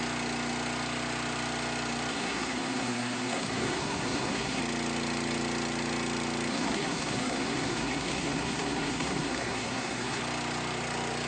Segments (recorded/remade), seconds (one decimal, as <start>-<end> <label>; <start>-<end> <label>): 0.0-2.1 recorded; 2.1-4.6 remade; 4.6-6.5 recorded; 6.5-10.2 remade; 10.2-11.3 recorded